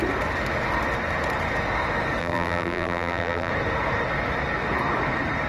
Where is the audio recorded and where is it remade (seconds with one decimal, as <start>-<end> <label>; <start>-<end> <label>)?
0.0-2.2 recorded; 2.2-3.5 remade; 3.5-5.5 recorded